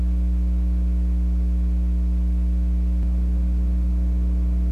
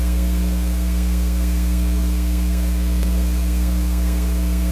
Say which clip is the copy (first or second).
second